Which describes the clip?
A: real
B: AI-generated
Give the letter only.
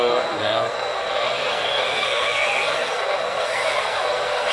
B